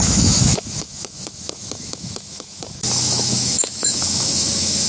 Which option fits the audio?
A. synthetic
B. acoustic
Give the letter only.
A